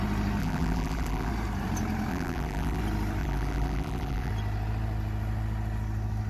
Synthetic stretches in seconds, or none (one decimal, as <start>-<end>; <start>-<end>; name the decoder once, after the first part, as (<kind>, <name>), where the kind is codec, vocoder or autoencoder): 0.4-1.3 (vocoder, BigVGAN v2); 2.1-2.8; 3.2-4.3